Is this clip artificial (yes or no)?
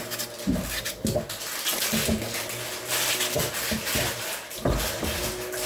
no